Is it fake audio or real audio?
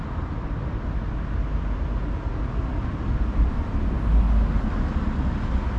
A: real